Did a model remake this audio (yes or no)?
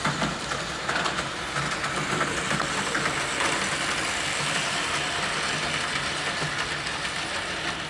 no